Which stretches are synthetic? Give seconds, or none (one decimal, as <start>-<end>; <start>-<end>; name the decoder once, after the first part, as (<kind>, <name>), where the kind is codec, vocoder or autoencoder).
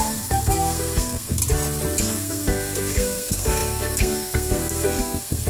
0.0-1.4 (codec, SNAC); 2.0-5.5